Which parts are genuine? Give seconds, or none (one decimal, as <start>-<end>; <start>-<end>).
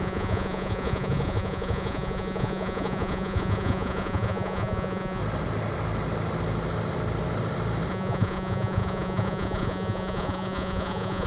5.2-7.9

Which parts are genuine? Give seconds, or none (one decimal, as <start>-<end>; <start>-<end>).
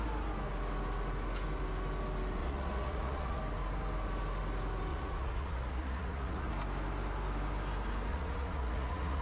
0.0-2.4; 3.4-4.9; 6.5-8.1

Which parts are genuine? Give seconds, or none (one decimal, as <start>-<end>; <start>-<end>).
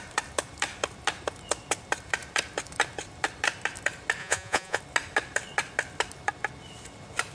0.0-4.2; 4.8-7.3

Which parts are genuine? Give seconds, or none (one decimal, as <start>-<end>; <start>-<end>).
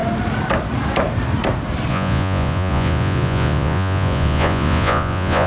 0.0-1.9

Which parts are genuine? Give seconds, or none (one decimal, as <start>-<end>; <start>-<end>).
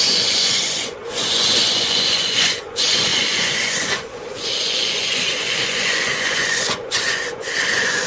none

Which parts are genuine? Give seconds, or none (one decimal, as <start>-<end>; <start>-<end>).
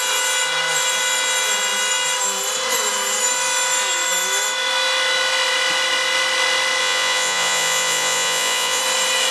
0.0-6.8; 8.8-9.3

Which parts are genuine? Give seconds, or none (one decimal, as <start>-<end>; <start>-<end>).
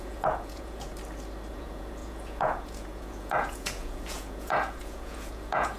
0.9-1.5